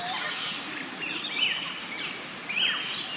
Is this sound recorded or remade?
recorded